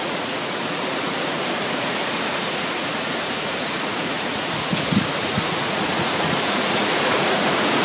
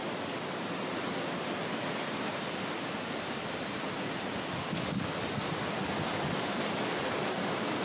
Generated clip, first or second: first